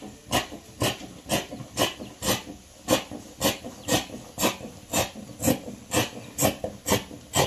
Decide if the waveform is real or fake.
real